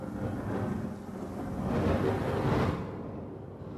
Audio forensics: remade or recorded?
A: recorded